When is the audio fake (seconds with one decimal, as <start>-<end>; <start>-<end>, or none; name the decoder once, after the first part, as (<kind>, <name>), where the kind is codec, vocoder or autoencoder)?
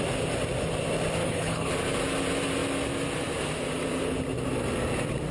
1.2-1.7 (codec, HILCodec)